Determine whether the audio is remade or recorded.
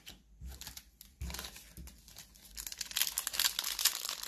recorded